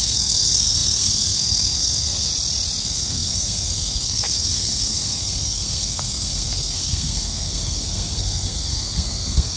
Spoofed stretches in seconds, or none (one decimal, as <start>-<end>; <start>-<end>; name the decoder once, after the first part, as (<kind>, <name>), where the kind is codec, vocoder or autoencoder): 0.0-2.3 (codec, SNAC); 2.8-9.6